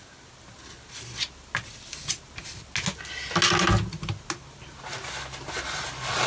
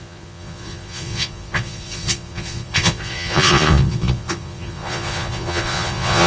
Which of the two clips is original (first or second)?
first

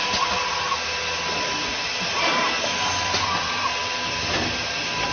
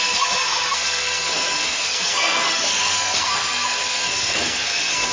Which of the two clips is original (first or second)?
first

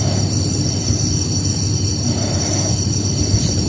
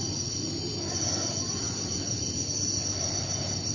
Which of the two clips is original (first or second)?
second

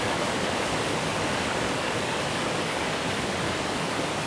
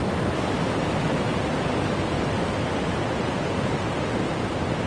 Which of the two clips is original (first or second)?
second